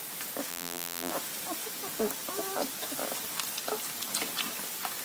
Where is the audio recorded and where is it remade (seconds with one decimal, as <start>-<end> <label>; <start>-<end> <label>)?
0.0-0.5 recorded; 0.5-1.1 remade; 1.1-5.0 recorded